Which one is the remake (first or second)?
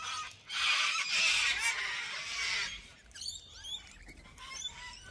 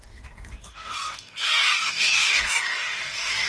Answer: second